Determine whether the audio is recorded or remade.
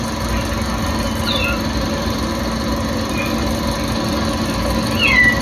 recorded